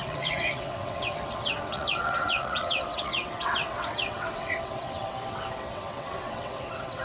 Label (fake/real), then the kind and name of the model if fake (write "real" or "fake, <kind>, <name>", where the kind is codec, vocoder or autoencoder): fake, vocoder, WaveNeXt